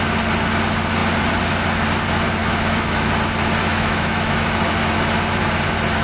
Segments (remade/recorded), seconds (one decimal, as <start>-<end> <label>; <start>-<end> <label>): 0.0-2.4 recorded; 2.4-3.1 remade; 3.1-3.6 recorded; 3.6-4.7 remade; 4.7-6.0 recorded